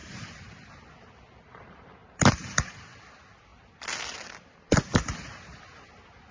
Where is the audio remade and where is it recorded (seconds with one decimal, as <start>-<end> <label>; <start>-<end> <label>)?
0.0-0.7 remade; 0.7-2.0 recorded; 2.0-3.1 remade; 3.1-6.3 recorded